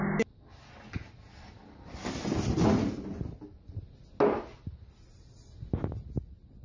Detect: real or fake real